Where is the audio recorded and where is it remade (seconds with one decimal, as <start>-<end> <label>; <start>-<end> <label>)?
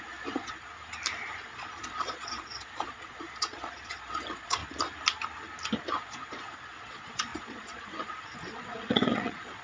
0.0-0.7 remade; 0.7-1.4 recorded; 1.4-4.6 remade; 4.6-6.0 recorded; 6.0-9.6 remade